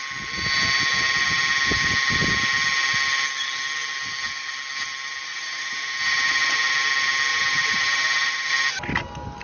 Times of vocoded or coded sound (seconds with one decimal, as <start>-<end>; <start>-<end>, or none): 5.3-6.8; 7.3-8.5